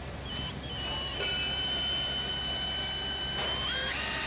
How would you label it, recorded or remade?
recorded